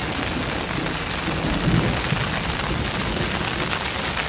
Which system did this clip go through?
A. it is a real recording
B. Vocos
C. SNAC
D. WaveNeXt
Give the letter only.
A